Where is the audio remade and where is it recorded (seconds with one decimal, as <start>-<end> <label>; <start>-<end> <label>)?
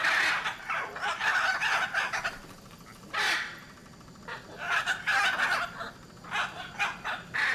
0.0-7.5 recorded